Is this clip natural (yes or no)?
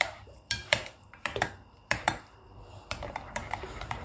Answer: no